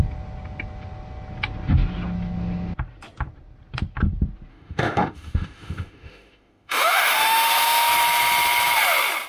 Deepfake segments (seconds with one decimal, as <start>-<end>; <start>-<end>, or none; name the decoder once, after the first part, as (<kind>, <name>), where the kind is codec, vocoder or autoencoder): 4.5-7.9 (autoencoder, DAC-VAE)